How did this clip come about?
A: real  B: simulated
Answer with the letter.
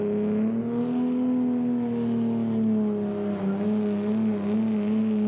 A